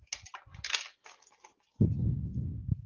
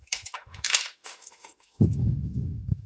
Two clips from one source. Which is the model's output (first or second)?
second